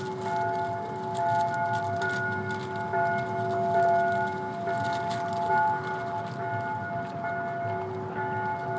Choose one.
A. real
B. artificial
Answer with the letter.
A